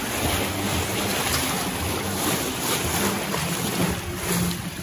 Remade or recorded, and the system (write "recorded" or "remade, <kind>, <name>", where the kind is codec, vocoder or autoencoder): recorded